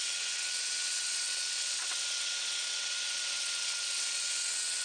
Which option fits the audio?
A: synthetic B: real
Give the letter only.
A